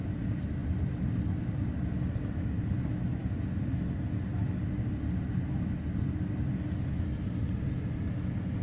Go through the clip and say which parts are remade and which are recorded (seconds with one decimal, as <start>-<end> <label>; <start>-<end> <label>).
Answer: 0.0-8.6 recorded

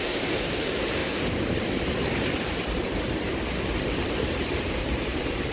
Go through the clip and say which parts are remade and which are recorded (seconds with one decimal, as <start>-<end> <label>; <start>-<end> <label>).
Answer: 0.0-1.0 remade; 1.0-3.9 recorded; 3.9-5.5 remade

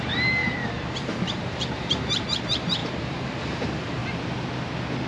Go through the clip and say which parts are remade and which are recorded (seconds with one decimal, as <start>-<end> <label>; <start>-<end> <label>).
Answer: 0.0-4.0 remade; 4.0-5.1 recorded

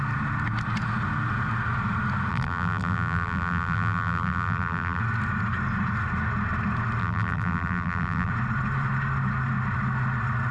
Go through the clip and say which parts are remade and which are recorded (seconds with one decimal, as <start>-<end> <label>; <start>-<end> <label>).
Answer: 0.0-2.3 recorded; 2.3-5.0 remade; 5.0-7.0 recorded; 7.0-8.3 remade; 8.3-10.5 recorded

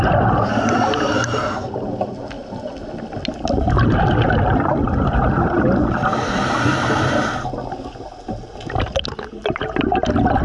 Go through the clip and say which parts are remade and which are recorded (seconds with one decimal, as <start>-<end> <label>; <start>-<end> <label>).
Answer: 0.0-10.4 recorded

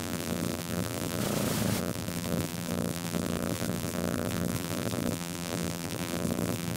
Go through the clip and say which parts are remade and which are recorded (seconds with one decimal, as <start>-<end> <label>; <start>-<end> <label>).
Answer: 0.0-1.2 remade; 1.2-1.8 recorded; 1.8-6.8 remade

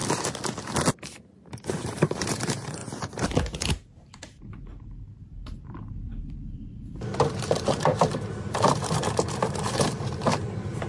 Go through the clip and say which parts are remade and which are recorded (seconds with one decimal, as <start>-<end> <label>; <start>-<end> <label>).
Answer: 0.0-1.0 recorded; 1.0-2.8 remade; 2.8-3.7 recorded; 3.7-10.9 remade

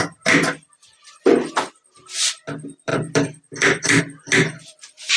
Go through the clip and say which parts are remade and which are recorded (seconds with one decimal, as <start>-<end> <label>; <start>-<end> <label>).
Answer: 0.0-2.9 recorded; 2.9-4.0 remade; 4.0-5.2 recorded